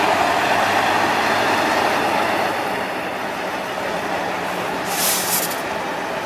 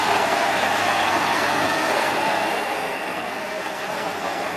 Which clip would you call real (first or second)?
first